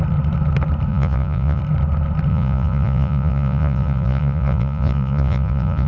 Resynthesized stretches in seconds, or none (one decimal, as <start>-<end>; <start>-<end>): 0.9-1.6; 2.3-5.9